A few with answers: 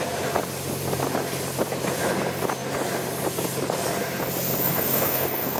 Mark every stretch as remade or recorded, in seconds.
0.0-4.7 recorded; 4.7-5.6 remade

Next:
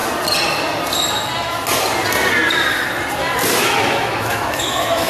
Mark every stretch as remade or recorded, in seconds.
0.0-3.6 recorded; 3.6-5.1 remade